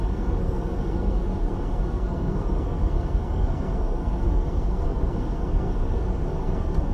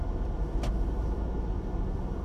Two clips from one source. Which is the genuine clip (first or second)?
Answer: second